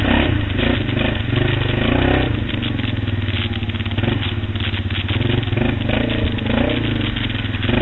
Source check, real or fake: real